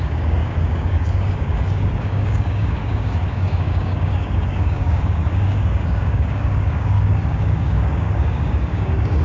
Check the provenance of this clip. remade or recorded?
remade